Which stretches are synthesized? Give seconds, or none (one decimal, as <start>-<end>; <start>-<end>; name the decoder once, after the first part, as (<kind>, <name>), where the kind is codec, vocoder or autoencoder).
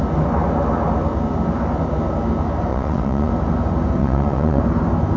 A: 2.7-3.3 (vocoder, WaveNeXt); 4.0-4.6